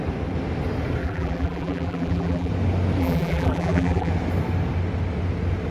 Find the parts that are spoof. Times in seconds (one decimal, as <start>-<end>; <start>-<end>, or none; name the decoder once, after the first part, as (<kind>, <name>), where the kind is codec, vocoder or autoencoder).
1.0-2.5 (vocoder, BigVGAN v2); 3.0-4.1

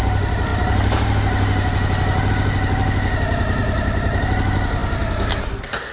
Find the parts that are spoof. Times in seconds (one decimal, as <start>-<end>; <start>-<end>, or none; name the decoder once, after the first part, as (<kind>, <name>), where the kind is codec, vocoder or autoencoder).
none

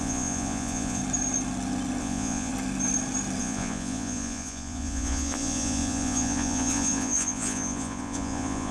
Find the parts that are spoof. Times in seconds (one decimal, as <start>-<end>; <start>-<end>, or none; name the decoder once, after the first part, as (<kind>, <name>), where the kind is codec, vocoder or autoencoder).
0.0-1.0 (vocoder, Vocos); 2.0-2.5; 3.4-8.7

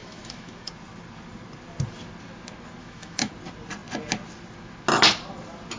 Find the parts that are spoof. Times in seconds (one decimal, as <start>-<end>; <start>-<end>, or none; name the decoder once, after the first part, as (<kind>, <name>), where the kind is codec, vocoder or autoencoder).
0.0-0.7 (autoencoder, DAC-VAE); 2.8-3.3

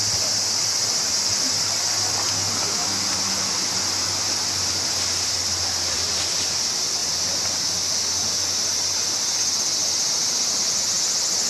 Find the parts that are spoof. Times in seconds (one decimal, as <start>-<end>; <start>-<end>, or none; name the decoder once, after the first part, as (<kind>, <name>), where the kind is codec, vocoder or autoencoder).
none